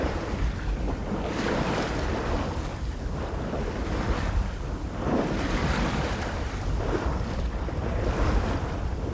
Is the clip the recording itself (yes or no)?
yes